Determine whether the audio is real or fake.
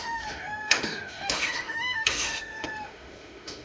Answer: fake